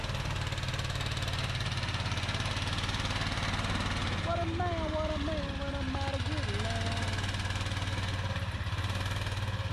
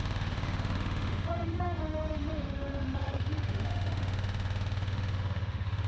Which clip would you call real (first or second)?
first